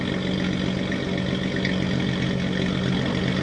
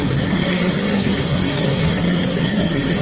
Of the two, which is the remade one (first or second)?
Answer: second